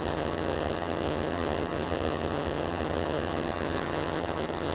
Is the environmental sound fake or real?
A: fake